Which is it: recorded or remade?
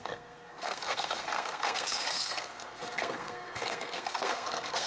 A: remade